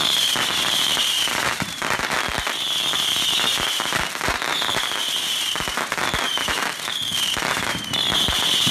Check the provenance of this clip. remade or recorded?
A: remade